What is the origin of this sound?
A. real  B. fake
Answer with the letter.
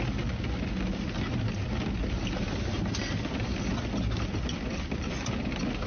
A